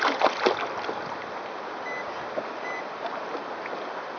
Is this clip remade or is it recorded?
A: recorded